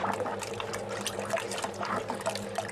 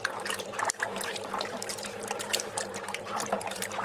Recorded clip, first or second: first